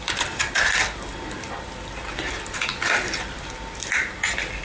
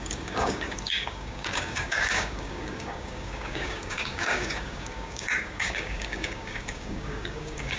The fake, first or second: second